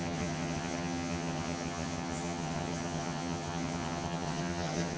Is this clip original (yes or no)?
no